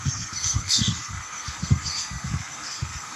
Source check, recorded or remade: remade